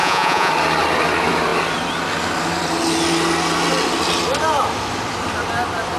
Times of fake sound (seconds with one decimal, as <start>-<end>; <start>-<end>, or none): 0.0-0.5